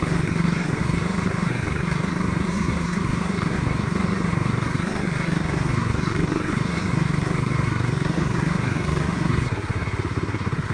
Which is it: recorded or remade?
remade